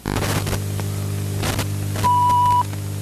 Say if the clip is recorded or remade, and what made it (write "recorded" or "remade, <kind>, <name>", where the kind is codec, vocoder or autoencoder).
recorded